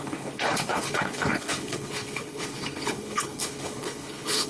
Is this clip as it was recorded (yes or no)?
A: no